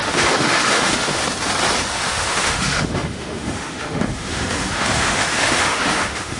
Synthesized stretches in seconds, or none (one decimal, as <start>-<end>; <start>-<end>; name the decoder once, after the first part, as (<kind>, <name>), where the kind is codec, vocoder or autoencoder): 0.0-1.2 (autoencoder, DAC-VAE); 1.9-6.4